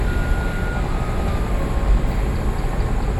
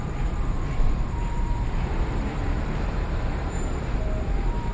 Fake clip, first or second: second